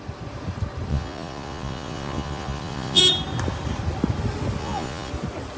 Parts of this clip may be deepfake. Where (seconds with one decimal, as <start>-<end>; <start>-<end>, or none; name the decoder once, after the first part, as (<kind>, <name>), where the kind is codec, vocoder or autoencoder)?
0.9-3.0 (vocoder, Vocos); 4.6-5.1